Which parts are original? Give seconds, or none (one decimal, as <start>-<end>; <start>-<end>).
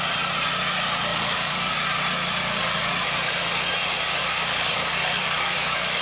0.0-1.1; 1.7-2.4; 2.9-4.2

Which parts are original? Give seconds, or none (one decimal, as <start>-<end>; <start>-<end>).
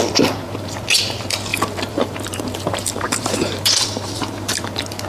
0.0-1.5; 4.6-5.1